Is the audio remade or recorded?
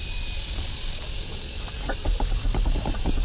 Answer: recorded